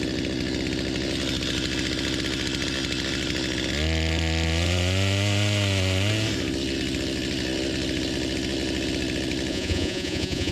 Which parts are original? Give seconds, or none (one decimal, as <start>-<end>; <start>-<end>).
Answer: 0.0-9.5